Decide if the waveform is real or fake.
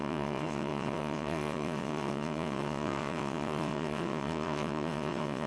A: fake